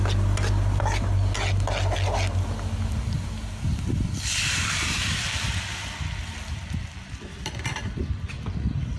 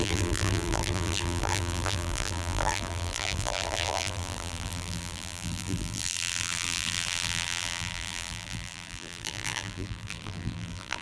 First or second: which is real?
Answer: first